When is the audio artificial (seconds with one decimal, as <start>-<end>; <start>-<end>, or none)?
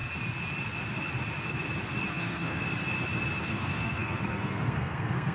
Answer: 2.1-2.6; 3.4-5.3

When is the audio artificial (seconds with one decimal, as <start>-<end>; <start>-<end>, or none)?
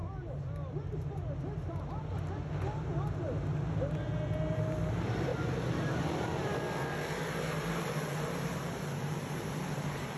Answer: 4.5-5.3; 5.9-6.5; 7.5-10.2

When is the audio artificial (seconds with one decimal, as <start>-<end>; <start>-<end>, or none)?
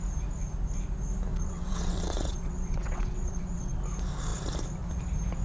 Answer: 1.3-3.8